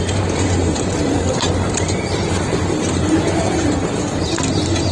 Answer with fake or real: fake